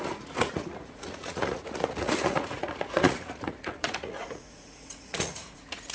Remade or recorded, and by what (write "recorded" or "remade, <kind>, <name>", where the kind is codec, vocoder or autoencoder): remade, vocoder, Vocos